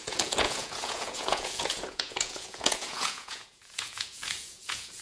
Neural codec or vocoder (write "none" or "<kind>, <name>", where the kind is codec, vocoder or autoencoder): vocoder, Vocos